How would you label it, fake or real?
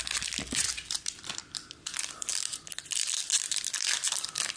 fake